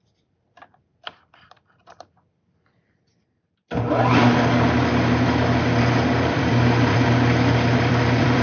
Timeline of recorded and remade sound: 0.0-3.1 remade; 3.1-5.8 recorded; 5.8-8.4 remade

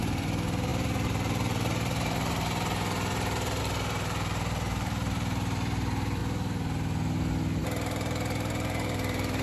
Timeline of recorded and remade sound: 0.0-6.2 remade; 6.2-7.6 recorded; 7.6-9.4 remade

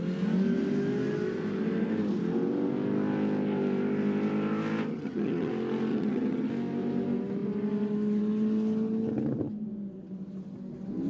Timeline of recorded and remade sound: 0.0-4.9 recorded; 4.9-5.5 remade; 5.5-5.9 recorded; 5.9-6.5 remade; 6.5-11.1 recorded

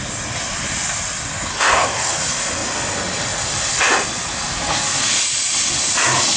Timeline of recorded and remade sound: 0.0-1.5 recorded; 1.5-2.2 remade; 2.2-6.4 recorded

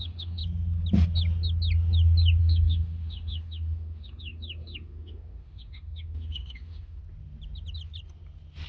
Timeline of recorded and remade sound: 0.0-0.4 remade; 0.4-2.4 recorded; 2.4-7.0 remade; 7.0-8.7 recorded